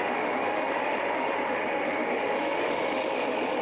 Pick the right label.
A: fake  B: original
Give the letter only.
A